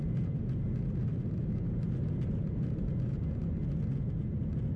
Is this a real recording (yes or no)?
yes